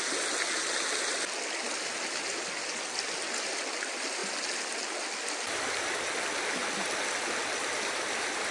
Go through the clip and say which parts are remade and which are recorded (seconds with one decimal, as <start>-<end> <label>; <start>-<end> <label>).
0.0-8.5 recorded